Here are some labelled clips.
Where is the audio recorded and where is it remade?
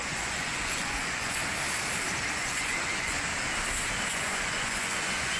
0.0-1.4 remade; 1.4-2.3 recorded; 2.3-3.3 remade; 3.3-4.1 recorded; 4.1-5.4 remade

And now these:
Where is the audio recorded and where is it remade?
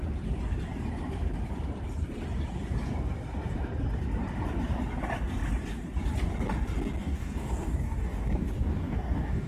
0.0-7.0 recorded; 7.0-9.5 remade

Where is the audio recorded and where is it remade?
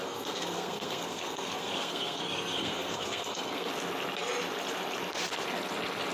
0.0-3.7 remade; 3.7-6.1 recorded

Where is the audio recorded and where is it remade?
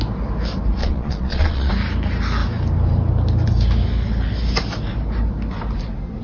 0.0-0.8 recorded; 0.8-1.7 remade; 1.7-6.2 recorded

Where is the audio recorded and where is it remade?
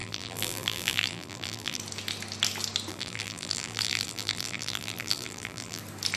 0.0-1.8 remade; 1.8-2.9 recorded; 2.9-5.8 remade; 5.8-6.2 recorded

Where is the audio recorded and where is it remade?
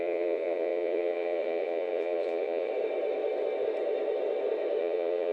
0.0-2.7 remade; 2.7-4.8 recorded; 4.8-5.3 remade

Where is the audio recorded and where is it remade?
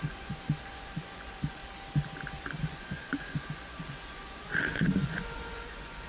0.0-1.6 remade; 1.6-2.5 recorded; 2.5-6.1 remade